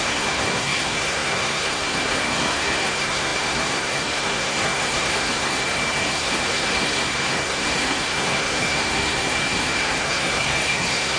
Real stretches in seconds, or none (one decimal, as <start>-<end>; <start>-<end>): none